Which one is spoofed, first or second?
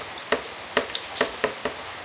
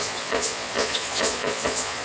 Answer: second